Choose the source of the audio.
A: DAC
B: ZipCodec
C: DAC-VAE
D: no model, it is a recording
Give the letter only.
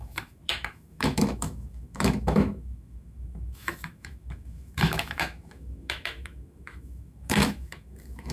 C